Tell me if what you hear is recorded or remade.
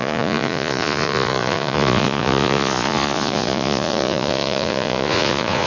remade